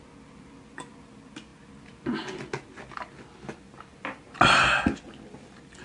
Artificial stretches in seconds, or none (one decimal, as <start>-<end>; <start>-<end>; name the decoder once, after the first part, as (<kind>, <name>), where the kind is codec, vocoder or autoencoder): none